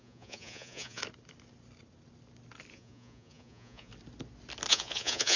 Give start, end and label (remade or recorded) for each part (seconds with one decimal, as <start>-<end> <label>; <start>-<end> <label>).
0.0-1.0 remade; 1.0-2.7 recorded; 2.7-3.9 remade; 3.9-4.7 recorded; 4.7-5.4 remade